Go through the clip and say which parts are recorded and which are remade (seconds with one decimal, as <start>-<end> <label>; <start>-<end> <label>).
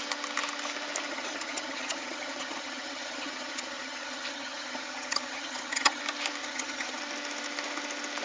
0.0-1.1 recorded; 1.1-6.0 remade; 6.0-6.4 recorded; 6.4-7.0 remade; 7.0-8.2 recorded